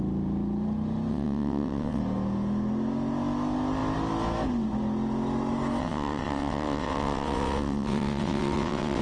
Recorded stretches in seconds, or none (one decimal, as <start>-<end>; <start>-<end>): 0.0-1.1; 2.0-5.8